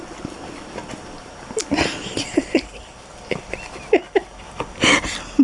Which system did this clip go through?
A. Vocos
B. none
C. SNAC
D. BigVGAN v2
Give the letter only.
B